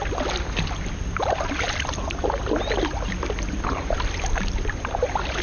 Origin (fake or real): real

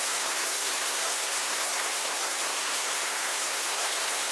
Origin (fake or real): fake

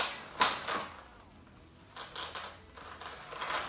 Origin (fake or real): real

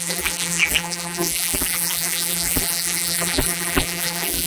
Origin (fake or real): fake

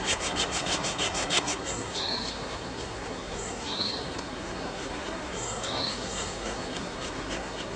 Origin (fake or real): fake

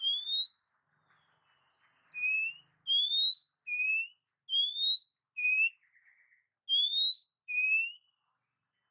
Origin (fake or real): real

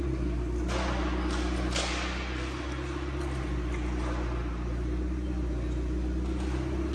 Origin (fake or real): real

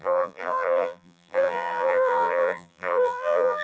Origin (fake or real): fake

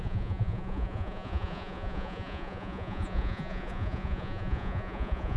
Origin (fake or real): fake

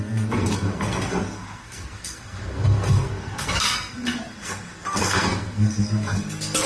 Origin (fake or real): fake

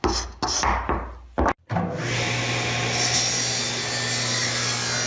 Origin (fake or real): real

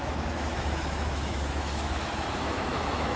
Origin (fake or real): fake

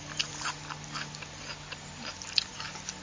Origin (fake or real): real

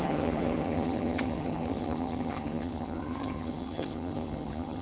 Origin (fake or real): fake